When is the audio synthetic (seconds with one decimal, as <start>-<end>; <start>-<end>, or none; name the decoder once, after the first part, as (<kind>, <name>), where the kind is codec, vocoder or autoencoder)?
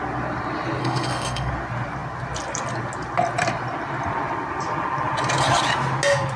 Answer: 0.8-1.5 (codec, SNAC)